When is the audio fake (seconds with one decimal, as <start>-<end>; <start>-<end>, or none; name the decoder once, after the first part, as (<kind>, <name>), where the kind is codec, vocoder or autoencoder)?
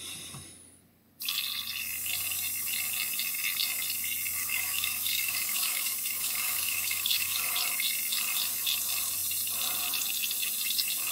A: 4.4-7.5 (codec, DAC)